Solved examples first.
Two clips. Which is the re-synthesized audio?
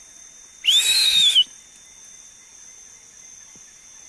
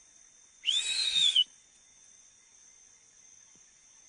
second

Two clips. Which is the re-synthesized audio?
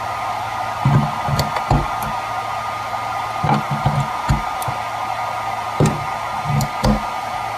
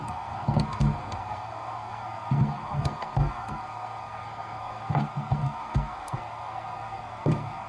second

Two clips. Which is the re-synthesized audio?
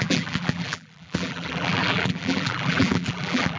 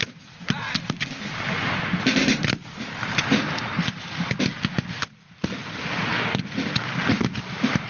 first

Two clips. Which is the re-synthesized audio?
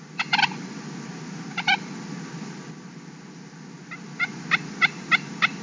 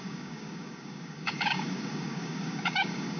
second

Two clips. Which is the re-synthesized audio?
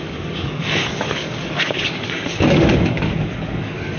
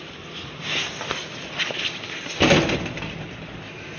first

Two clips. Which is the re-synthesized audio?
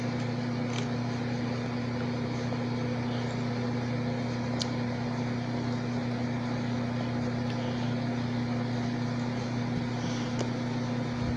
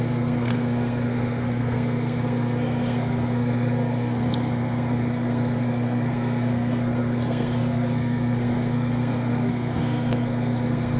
second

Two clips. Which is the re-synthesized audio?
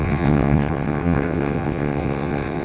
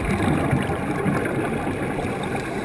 first